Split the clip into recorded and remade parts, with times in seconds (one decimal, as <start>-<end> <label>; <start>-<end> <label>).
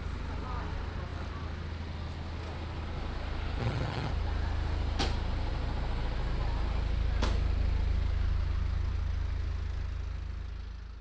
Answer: 0.0-3.6 recorded; 3.6-4.1 remade; 4.1-11.0 recorded